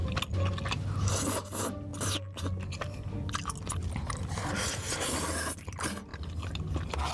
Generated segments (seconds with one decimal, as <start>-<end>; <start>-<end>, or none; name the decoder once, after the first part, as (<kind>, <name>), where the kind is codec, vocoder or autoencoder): none